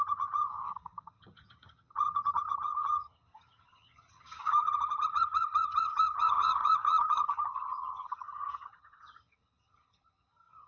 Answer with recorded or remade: remade